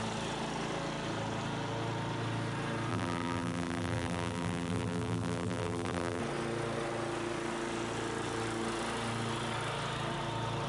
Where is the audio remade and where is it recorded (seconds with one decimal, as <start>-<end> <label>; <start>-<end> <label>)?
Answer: 0.0-2.9 recorded; 2.9-6.2 remade; 6.2-10.7 recorded

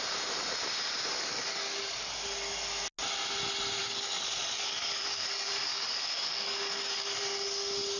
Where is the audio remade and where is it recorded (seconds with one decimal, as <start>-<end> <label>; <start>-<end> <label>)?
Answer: 0.0-1.2 recorded; 1.2-2.1 remade; 2.1-3.8 recorded; 3.8-7.2 remade; 7.2-8.0 recorded

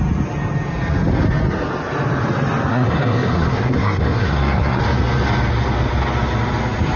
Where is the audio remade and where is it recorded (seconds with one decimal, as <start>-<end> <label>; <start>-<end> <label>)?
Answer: 0.0-2.7 recorded; 2.7-4.8 remade; 4.8-7.0 recorded

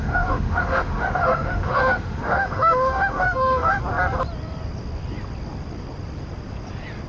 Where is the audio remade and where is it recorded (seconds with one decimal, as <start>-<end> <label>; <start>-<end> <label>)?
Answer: 0.0-3.8 remade; 3.8-7.1 recorded

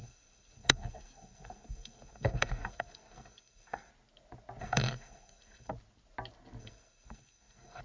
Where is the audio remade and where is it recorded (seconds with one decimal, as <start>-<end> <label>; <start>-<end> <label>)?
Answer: 0.0-3.9 remade; 3.9-4.6 recorded; 4.6-5.7 remade; 5.7-6.6 recorded; 6.6-7.8 remade

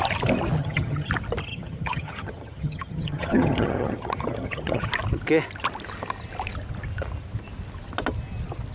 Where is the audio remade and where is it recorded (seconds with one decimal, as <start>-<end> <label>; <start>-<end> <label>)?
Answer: 0.0-0.6 recorded; 0.6-1.1 remade; 1.1-1.5 recorded; 1.5-4.9 remade; 4.9-8.7 recorded

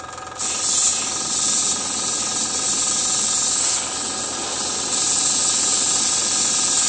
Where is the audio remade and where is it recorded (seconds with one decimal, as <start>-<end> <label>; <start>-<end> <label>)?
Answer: 0.0-6.9 recorded